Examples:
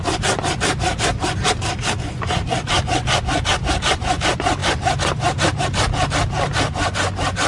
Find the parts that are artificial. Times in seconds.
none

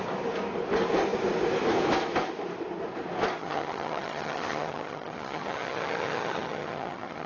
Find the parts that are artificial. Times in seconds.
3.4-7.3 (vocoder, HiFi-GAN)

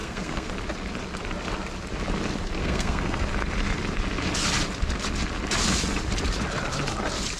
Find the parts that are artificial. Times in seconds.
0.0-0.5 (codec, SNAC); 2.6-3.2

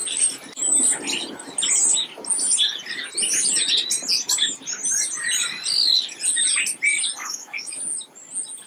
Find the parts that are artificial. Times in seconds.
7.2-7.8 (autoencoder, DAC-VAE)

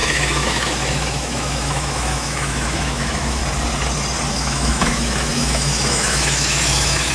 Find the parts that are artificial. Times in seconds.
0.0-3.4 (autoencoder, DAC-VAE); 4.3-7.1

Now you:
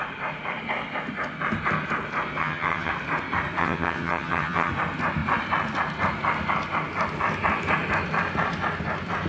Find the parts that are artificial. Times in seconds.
2.4-2.9 (vocoder, HiFi-GAN); 3.6-4.7